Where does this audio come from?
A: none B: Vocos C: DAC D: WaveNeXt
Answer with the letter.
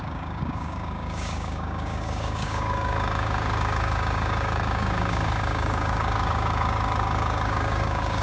C